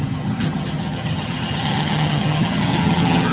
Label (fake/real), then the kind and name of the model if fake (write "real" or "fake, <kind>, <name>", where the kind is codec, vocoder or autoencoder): fake, vocoder, HiFi-GAN